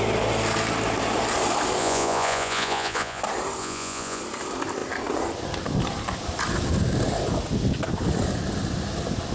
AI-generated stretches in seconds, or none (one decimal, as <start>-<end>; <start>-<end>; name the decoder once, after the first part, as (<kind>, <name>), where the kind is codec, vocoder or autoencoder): 1.8-3.2 (vocoder, Vocos); 3.6-4.2